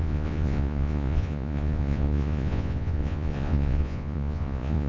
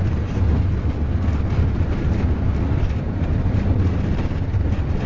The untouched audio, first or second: second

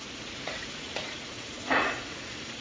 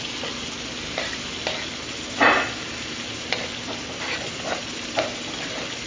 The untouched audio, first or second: second